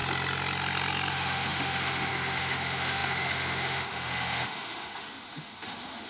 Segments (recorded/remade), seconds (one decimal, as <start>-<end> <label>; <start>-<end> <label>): 0.0-1.1 recorded; 1.1-6.1 remade